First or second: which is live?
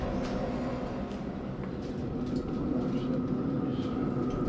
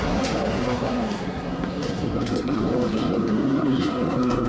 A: first